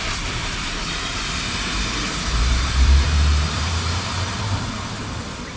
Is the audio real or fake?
fake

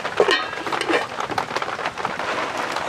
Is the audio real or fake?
real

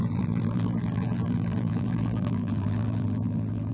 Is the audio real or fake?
fake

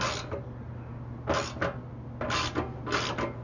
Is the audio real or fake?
real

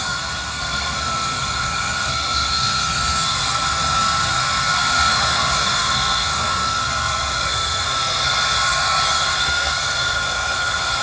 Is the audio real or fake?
fake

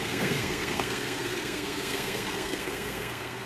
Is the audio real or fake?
fake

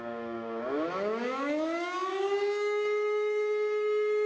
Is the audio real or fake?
fake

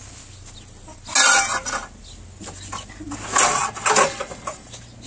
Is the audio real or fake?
real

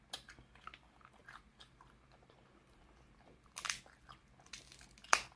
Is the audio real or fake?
real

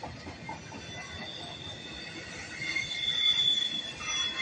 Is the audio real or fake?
real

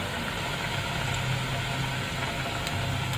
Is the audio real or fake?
real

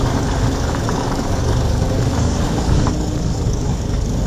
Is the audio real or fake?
fake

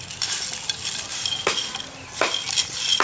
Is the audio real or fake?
real